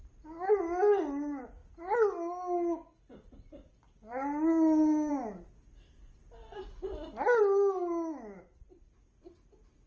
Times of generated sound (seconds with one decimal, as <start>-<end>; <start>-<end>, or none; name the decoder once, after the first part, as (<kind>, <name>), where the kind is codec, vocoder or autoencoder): none